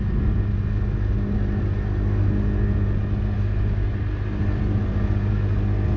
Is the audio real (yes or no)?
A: yes